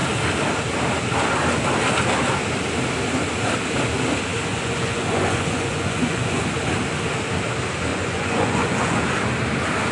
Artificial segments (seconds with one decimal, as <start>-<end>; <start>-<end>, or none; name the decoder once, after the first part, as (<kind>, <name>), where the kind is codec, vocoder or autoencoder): 4.5-6.4 (vocoder, Vocos); 7.9-9.0